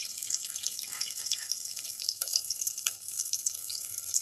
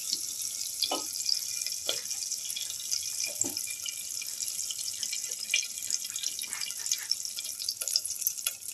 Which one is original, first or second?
second